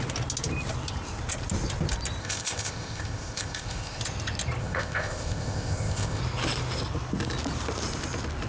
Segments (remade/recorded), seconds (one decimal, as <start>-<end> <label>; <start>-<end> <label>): 0.0-2.2 recorded; 2.2-4.0 remade; 4.0-4.6 recorded; 4.6-6.2 remade; 6.2-8.5 recorded